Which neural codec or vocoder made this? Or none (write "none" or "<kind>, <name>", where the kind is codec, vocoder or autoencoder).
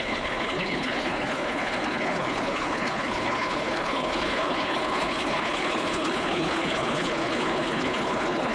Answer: codec, HILCodec